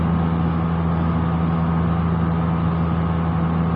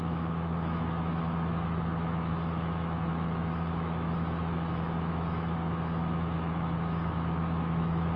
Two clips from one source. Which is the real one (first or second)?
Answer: first